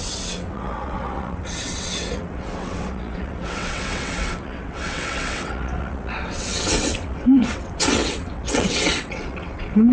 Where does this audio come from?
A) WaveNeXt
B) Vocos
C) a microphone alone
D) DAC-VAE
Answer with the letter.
A